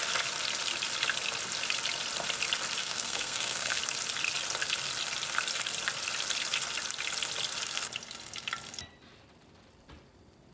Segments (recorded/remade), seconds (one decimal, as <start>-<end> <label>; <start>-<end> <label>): 0.0-2.8 recorded; 2.8-3.8 remade; 3.8-10.5 recorded